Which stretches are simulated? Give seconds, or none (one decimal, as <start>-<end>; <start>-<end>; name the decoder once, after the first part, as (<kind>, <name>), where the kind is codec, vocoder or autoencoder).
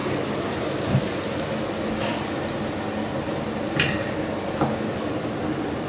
none